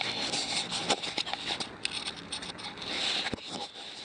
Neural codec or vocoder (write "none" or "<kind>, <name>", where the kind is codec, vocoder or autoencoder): none